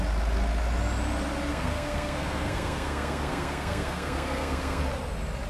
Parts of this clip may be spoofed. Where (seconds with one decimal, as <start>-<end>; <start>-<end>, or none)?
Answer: 1.5-4.8